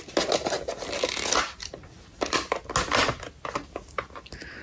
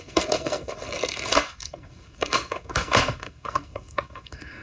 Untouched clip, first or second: first